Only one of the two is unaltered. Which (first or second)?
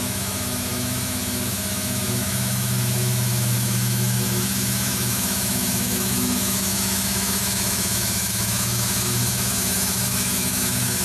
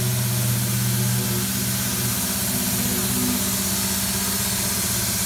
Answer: second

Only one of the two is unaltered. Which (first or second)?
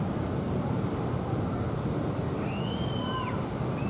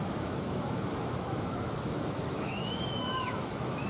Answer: first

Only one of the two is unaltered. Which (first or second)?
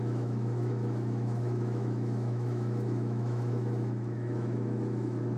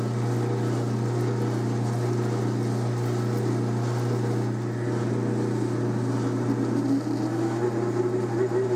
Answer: second